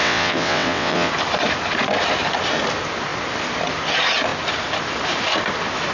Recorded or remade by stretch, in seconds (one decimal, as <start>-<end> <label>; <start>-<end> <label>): 0.0-1.1 remade; 1.1-5.9 recorded